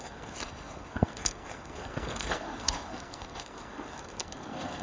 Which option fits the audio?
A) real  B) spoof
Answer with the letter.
B